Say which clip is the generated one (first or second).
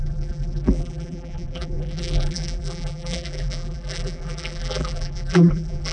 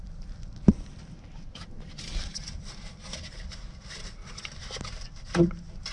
first